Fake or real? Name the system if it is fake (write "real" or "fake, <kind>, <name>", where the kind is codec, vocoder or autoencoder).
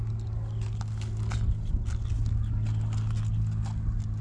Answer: real